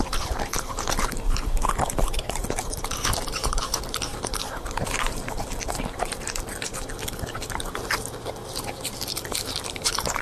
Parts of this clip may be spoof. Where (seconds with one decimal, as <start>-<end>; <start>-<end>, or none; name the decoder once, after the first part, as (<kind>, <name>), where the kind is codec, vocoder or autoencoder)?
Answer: 0.0-6.5 (vocoder, BigVGAN v2); 8.6-10.2